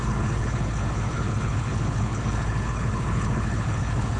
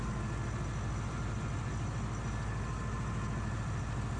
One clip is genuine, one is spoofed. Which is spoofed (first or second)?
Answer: first